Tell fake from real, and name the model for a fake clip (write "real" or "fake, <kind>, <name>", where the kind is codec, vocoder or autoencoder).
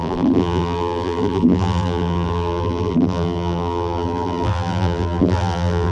fake, vocoder, BigVGAN v2